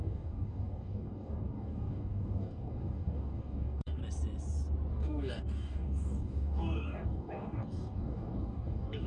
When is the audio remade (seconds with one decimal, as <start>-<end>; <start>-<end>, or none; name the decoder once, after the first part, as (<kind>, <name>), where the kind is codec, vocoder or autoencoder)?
0.0-4.0 (codec, DAC); 4.9-9.1

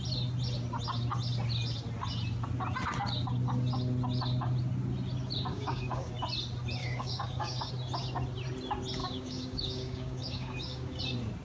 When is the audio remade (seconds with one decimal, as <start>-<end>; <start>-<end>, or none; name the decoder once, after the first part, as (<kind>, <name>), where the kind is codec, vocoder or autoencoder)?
5.5-6.1 (codec, DAC); 6.8-7.7; 9.0-11.0

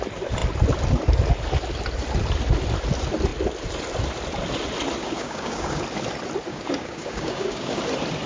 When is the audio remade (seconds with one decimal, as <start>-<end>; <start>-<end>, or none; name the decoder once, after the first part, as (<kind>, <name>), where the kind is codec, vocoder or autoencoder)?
5.0-5.8 (codec, DAC); 6.5-7.8

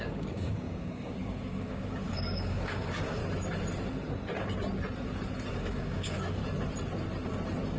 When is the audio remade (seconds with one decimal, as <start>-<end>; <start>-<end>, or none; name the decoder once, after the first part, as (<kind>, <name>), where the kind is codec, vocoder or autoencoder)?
0.0-3.2 (codec, DAC); 5.5-6.4

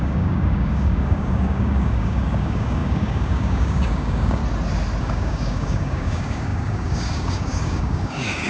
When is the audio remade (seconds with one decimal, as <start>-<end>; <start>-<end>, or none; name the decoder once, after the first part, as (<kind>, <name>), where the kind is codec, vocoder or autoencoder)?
0.0-4.4 (codec, DAC); 5.0-8.5

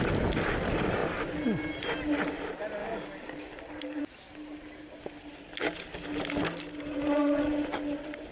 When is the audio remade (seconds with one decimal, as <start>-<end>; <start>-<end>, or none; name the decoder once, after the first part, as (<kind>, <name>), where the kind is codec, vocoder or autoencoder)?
2.8-4.0 (codec, DAC)